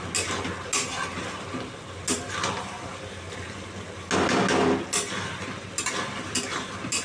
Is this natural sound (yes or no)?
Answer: yes